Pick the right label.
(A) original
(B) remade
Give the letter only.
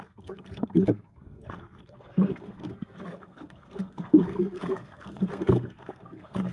B